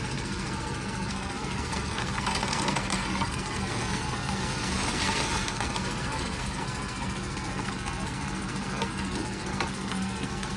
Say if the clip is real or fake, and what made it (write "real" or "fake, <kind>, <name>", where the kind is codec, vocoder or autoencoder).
fake, codec, SNAC